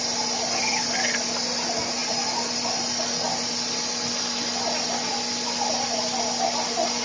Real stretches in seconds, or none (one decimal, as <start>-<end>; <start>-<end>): 0.0-7.0